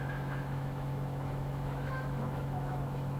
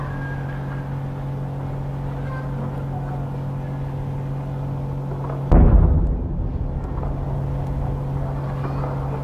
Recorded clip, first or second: second